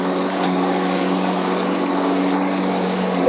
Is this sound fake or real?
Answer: fake